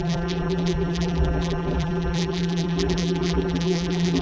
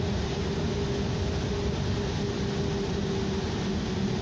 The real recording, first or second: second